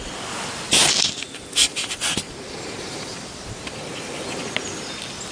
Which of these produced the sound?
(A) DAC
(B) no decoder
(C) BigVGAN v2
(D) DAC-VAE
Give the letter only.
B